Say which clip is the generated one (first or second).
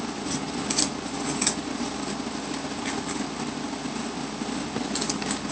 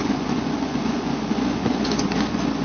second